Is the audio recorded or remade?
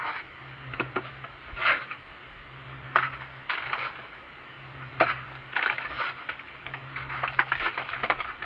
remade